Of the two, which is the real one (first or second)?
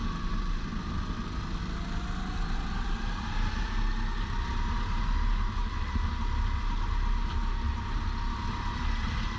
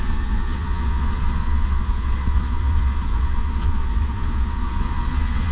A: first